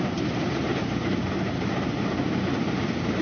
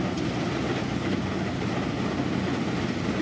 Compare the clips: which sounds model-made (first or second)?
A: first